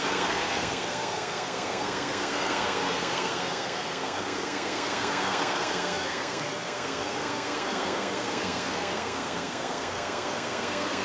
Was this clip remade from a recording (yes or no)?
yes